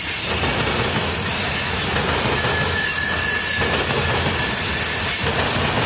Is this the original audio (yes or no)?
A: yes